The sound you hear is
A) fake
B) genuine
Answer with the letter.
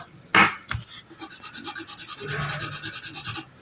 B